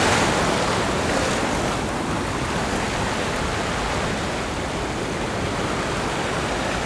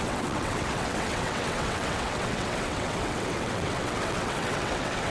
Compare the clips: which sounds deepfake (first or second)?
second